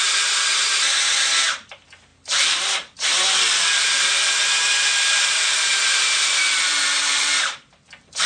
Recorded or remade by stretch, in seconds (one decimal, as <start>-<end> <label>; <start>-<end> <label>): 0.0-0.5 remade; 0.5-1.1 recorded; 1.1-8.3 remade